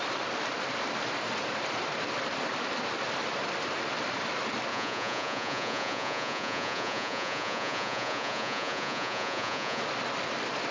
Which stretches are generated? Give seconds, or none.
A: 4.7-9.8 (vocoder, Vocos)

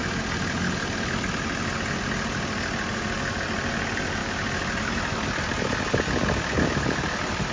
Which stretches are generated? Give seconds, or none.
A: none